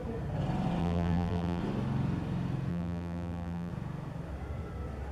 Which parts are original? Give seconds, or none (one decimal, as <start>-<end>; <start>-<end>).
0.0-0.8; 1.6-2.7; 3.7-5.1